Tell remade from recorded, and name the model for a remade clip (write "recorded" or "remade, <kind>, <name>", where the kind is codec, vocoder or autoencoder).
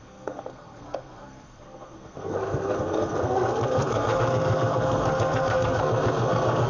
remade, codec, SNAC